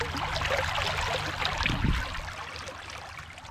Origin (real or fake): real